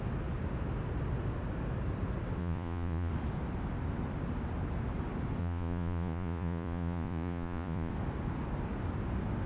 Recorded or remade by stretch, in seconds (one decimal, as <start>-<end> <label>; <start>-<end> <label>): 0.0-2.4 recorded; 2.4-3.1 remade; 3.1-5.4 recorded; 5.4-7.9 remade; 7.9-9.5 recorded